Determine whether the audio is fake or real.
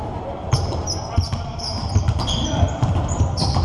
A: fake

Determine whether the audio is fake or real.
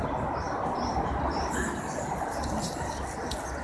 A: real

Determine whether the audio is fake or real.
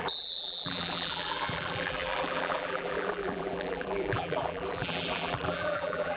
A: fake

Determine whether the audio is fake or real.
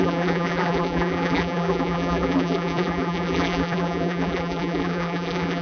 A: fake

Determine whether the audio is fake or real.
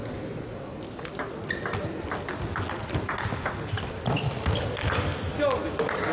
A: real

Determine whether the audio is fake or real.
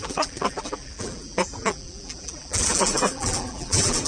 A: fake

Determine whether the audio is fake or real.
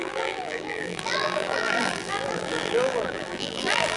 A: fake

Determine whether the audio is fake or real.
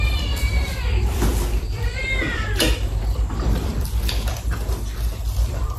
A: fake